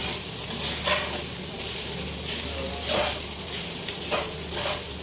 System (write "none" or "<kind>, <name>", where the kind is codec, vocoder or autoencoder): none